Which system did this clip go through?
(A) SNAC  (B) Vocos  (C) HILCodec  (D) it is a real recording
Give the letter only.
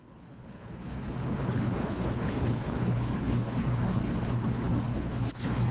C